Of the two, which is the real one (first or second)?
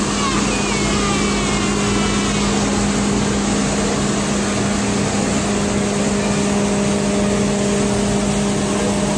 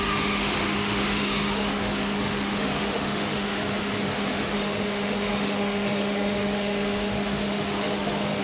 first